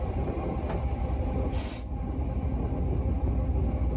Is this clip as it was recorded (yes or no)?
yes